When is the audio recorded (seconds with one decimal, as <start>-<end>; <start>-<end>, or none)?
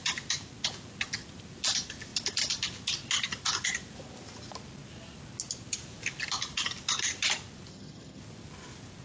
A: 0.0-7.7; 8.2-9.0